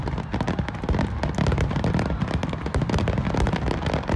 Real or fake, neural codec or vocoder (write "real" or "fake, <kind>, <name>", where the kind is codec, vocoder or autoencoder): real